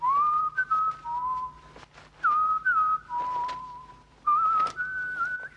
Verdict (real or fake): real